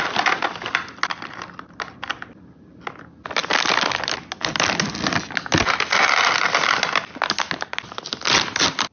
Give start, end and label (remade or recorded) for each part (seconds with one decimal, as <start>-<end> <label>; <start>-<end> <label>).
0.0-8.9 recorded